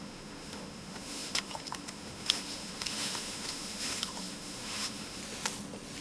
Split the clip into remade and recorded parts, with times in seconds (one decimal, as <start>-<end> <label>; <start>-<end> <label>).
0.0-5.2 remade; 5.2-6.0 recorded